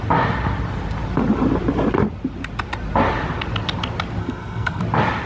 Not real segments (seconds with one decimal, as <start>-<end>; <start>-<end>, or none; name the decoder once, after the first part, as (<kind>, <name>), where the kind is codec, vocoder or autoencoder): 4.2-4.8 (codec, SNAC)